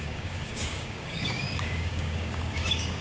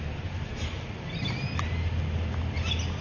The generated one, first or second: first